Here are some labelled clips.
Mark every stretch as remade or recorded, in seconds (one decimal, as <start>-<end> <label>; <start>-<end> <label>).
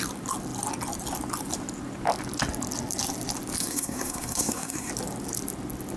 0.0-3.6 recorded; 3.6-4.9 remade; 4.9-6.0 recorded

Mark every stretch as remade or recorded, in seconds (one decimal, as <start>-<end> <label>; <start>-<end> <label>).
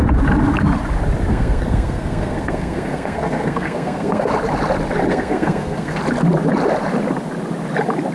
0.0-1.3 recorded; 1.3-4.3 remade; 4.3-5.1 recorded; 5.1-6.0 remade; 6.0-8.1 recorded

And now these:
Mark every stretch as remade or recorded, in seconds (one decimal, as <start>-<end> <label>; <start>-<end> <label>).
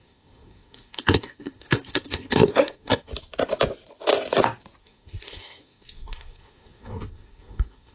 0.0-3.1 remade; 3.1-4.8 recorded; 4.8-7.9 remade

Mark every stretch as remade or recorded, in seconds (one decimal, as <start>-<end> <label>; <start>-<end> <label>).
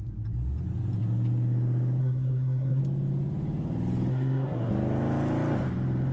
0.0-2.0 recorded; 2.0-2.8 remade; 2.8-4.1 recorded; 4.1-4.7 remade; 4.7-6.1 recorded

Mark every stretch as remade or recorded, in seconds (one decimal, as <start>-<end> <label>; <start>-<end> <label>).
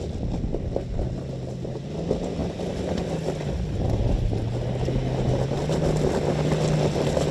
0.0-7.3 recorded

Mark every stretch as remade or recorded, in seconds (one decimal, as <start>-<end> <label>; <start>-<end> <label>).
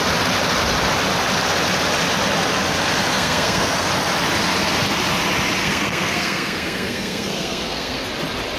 0.0-3.1 recorded; 3.1-3.9 remade; 3.9-5.6 recorded; 5.6-8.1 remade; 8.1-8.6 recorded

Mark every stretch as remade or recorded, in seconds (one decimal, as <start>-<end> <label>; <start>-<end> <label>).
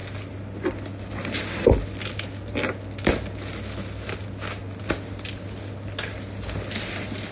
0.0-7.3 recorded